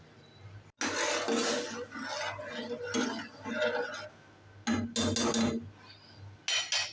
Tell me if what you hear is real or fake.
real